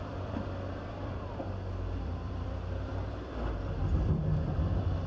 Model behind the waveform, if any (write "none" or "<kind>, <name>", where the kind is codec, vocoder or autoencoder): vocoder, BigVGAN v2